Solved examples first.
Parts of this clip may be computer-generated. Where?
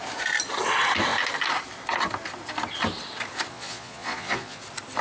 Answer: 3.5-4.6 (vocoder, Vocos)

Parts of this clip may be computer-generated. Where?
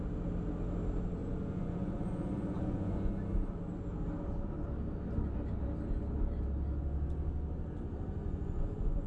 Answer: 1.2-3.1 (vocoder, Vocos); 8.2-9.1